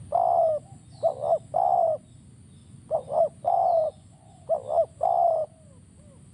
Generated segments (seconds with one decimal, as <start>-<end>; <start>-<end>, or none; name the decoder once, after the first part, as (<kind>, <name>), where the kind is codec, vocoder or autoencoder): 2.6-4.3 (vocoder, Vocos)